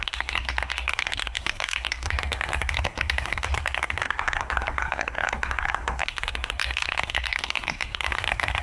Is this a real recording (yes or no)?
no